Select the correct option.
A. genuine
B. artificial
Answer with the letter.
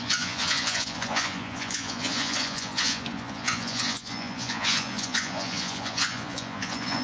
B